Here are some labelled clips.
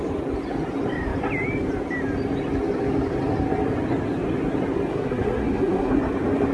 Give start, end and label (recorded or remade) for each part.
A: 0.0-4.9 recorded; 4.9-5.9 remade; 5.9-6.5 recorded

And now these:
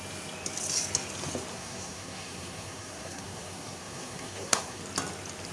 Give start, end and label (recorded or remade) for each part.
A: 0.0-1.5 recorded; 1.5-4.8 remade; 4.8-5.5 recorded

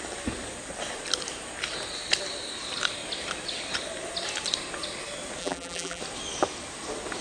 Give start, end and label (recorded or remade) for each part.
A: 0.0-5.4 recorded; 5.4-6.0 remade; 6.0-7.2 recorded

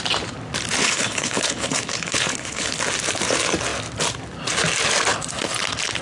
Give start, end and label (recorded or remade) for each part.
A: 0.0-0.8 recorded; 0.8-2.8 remade; 2.8-6.0 recorded

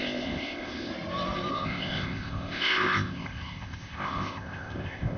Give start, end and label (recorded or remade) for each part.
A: 0.0-0.9 remade; 0.9-1.5 recorded; 1.5-5.2 remade

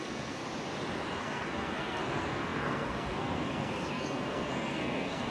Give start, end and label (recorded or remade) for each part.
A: 0.0-0.4 remade; 0.4-1.2 recorded; 1.2-5.3 remade

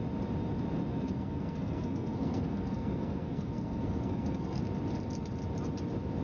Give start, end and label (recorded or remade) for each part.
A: 0.0-0.9 recorded; 0.9-4.6 remade; 4.6-6.2 recorded